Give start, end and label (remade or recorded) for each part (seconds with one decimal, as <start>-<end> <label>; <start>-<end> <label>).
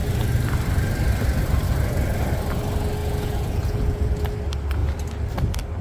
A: 0.0-3.0 recorded; 3.0-4.1 remade; 4.1-5.8 recorded